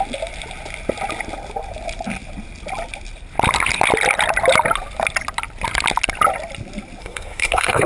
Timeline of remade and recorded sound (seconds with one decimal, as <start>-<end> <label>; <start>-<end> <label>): 0.0-7.0 recorded; 7.0-7.9 remade